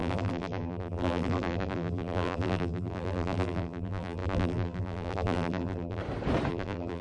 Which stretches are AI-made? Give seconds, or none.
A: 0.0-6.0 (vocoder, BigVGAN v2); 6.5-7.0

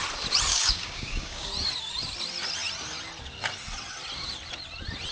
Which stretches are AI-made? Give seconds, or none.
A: 0.5-1.5 (codec, DAC)